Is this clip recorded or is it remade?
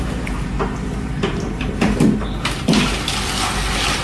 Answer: recorded